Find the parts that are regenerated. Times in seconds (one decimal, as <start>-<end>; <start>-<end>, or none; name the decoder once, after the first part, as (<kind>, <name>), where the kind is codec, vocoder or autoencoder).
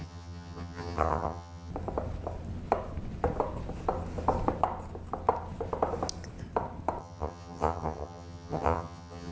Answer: 0.0-1.7 (vocoder, HiFi-GAN); 7.0-9.3